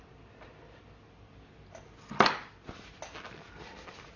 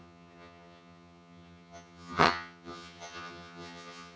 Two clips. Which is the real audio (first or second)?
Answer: first